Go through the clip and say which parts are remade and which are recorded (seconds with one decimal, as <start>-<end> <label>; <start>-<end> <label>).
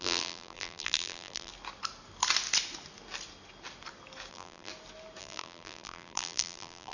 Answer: 0.0-1.5 remade; 1.5-4.3 recorded; 4.3-4.7 remade; 4.7-5.2 recorded; 5.2-6.9 remade